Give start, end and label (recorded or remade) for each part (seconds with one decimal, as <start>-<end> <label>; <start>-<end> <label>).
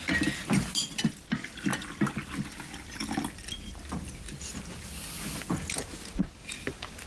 0.0-7.1 recorded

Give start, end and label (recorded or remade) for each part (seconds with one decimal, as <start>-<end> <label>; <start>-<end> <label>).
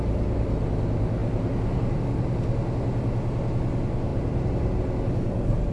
0.0-1.2 recorded; 1.2-2.0 remade; 2.0-4.1 recorded; 4.1-4.8 remade; 4.8-5.7 recorded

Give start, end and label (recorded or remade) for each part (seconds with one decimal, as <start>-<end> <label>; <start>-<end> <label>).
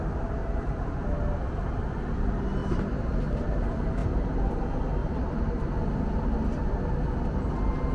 0.0-0.4 recorded; 0.4-1.0 remade; 1.0-2.6 recorded; 2.6-3.6 remade; 3.6-4.0 recorded; 4.0-4.5 remade; 4.5-5.0 recorded; 5.0-5.7 remade; 5.7-7.9 recorded